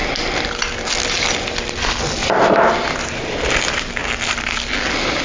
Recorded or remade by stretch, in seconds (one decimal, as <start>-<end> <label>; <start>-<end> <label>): 0.0-5.2 recorded